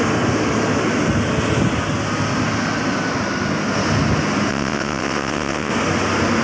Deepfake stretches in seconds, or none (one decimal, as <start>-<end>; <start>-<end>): 4.5-5.7